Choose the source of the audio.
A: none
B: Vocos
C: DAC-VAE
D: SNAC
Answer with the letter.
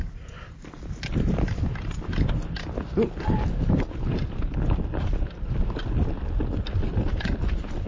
A